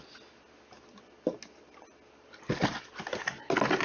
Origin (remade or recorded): recorded